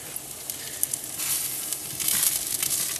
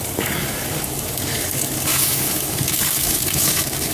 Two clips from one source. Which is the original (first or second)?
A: first